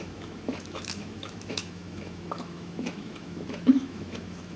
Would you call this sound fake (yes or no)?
yes